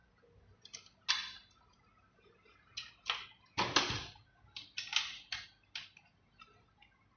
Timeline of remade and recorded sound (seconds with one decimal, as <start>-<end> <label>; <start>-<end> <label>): 0.0-7.2 recorded